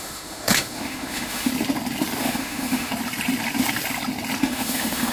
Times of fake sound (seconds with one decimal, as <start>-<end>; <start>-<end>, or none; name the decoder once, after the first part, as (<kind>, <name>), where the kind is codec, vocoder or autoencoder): 0.0-1.5 (autoencoder, DAC-VAE); 2.2-2.9; 4.4-5.1